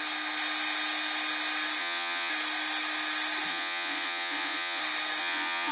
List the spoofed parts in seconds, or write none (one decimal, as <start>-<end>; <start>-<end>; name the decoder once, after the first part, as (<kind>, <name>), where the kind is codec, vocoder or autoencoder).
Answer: 1.8-2.3 (vocoder, Vocos); 3.5-4.8; 5.2-5.7